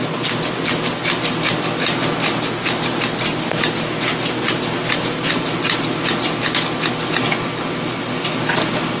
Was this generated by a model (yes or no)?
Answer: no